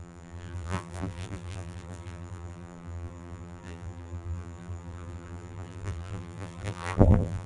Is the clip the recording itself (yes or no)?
no